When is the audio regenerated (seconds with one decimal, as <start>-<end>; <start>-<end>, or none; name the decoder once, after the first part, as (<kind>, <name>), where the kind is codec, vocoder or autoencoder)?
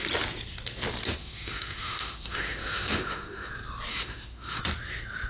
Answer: 1.2-3.5 (autoencoder, DAC-VAE); 3.9-4.6